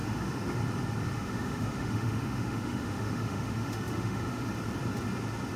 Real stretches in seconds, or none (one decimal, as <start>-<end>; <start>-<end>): 0.6-1.1; 4.5-5.6